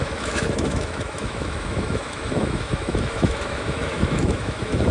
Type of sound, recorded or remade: remade